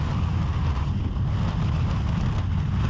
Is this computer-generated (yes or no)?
no